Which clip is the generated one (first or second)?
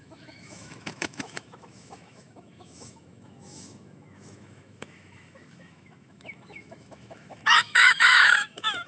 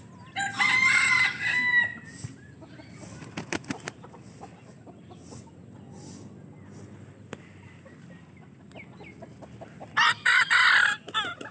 first